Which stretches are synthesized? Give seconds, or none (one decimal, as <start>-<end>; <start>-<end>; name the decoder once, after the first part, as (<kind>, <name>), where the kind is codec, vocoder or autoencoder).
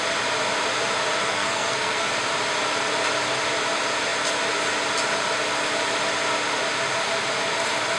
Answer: 1.2-2.1 (codec, SNAC)